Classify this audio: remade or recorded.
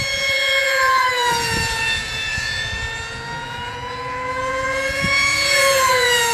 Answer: remade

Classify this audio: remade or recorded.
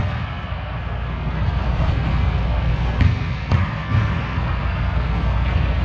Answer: remade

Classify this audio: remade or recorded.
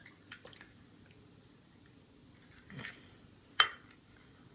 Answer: recorded